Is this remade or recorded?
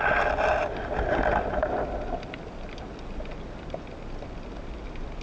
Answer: recorded